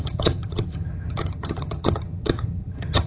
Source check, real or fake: fake